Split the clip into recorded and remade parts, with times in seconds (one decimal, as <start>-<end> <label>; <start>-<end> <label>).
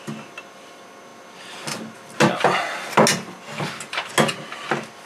0.0-5.1 recorded